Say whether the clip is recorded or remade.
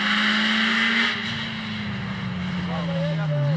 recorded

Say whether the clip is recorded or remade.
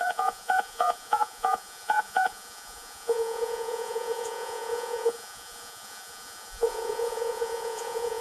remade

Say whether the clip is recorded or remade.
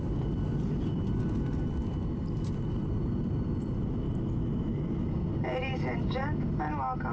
recorded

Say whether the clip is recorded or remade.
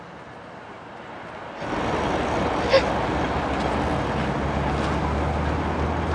recorded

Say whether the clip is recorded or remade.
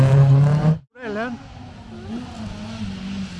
recorded